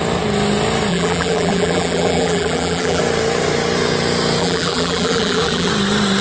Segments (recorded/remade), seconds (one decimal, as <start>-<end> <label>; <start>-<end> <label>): 0.0-0.9 recorded; 0.9-3.0 remade; 3.0-4.4 recorded; 4.4-5.7 remade; 5.7-6.2 recorded